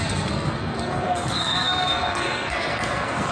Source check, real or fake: fake